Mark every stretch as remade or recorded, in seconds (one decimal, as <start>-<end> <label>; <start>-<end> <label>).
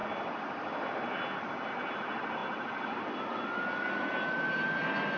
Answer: 0.0-5.2 recorded